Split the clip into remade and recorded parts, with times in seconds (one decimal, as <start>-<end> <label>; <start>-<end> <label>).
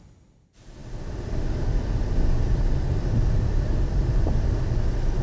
0.0-5.2 recorded